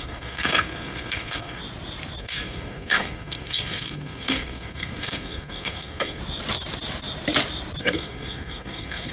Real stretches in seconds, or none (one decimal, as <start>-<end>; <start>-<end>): 1.6-2.2; 6.2-7.8